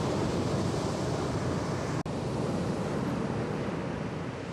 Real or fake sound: real